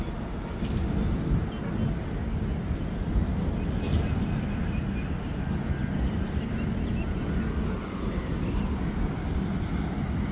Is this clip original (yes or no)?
yes